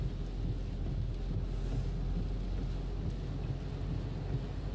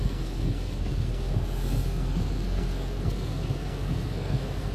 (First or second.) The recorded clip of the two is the first